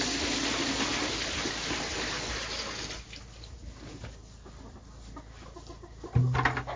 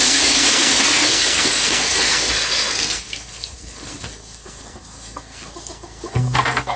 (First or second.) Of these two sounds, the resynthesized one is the second